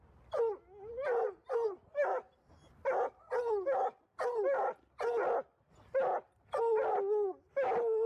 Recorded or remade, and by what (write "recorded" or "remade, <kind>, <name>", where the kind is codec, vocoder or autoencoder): recorded